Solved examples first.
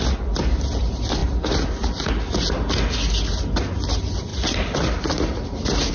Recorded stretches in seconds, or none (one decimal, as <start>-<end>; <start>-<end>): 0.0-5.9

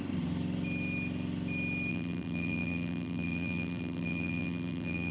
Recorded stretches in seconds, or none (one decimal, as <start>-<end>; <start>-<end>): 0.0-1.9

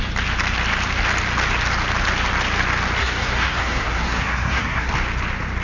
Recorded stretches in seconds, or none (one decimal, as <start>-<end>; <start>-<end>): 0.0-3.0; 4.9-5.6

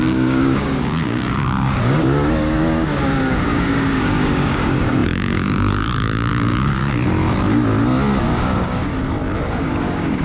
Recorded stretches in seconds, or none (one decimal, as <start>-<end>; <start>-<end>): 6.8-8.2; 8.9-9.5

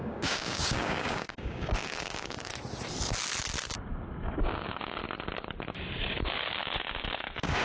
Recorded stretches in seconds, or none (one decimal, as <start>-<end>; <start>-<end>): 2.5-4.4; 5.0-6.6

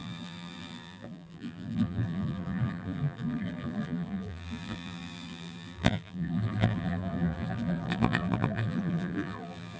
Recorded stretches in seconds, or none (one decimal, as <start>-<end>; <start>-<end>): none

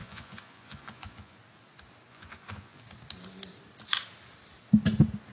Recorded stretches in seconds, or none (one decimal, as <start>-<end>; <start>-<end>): 1.4-2.1; 2.8-5.3

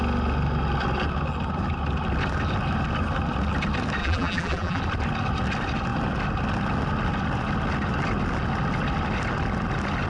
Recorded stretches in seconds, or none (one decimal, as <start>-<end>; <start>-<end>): 0.0-4.0; 4.8-10.1